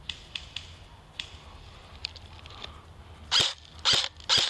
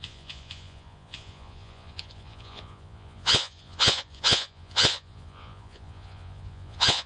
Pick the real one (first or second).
first